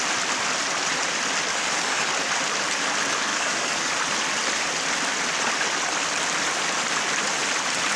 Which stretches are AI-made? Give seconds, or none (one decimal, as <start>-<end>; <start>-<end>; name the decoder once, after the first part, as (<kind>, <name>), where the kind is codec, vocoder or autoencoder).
1.5-2.1 (codec, DAC); 3.3-3.9